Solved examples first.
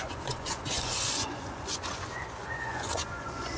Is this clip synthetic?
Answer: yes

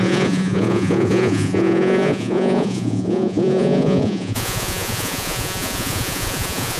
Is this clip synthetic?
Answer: yes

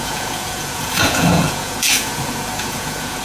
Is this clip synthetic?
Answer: yes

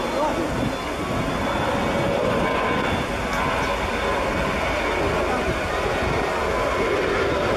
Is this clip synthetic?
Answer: no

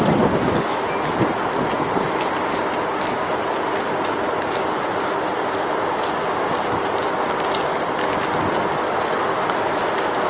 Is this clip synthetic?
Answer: no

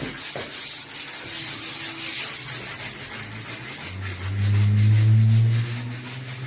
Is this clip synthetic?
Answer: no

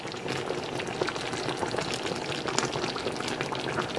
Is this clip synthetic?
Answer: no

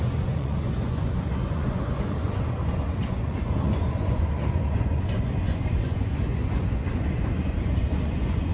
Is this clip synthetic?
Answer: yes